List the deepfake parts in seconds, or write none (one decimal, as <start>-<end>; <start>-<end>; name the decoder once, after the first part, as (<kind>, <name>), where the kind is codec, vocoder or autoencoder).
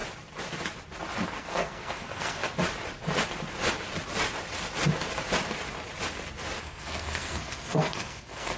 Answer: 1.4-2.4 (codec, SNAC); 6.6-8.6